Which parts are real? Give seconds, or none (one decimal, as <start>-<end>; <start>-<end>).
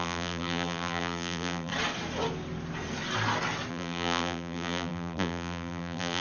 1.7-3.7